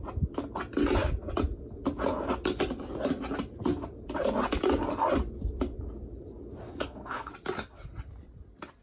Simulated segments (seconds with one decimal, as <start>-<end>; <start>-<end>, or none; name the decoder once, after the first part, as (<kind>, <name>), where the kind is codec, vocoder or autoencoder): 6.7-7.3 (codec, SNAC)